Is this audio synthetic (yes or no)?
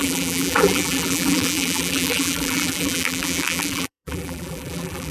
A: yes